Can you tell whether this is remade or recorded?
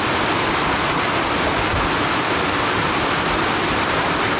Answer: recorded